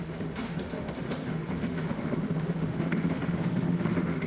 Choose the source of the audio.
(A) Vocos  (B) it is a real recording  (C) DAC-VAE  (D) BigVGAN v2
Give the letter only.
C